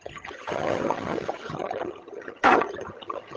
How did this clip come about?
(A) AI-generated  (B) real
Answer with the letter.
A